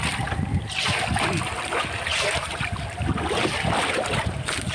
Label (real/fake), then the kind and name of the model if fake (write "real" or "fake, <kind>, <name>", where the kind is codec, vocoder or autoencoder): real